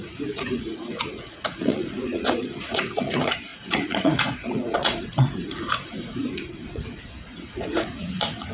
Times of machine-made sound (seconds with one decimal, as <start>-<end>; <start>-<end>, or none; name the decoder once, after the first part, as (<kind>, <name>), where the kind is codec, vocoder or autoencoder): 0.0-8.5 (vocoder, Vocos)